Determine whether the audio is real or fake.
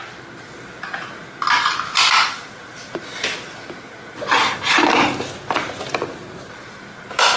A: real